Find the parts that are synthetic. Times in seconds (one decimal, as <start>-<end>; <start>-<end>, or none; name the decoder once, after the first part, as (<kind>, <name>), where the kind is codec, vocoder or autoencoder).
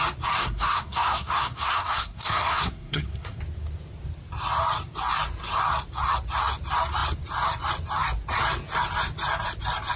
0.4-3.4 (codec, SNAC)